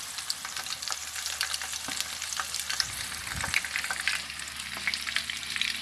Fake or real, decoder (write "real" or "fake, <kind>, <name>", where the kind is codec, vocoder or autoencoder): real